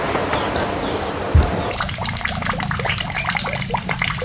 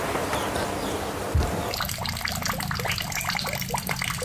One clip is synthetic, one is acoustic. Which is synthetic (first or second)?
first